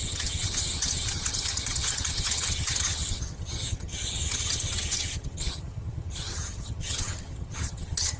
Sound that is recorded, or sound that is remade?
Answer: remade